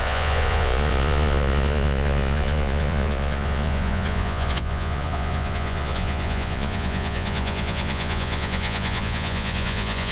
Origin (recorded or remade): remade